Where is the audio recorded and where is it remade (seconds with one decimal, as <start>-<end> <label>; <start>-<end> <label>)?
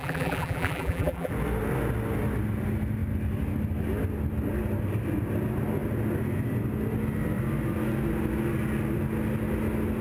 0.0-1.3 remade; 1.3-10.0 recorded